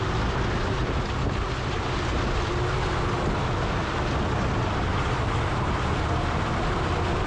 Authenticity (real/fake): real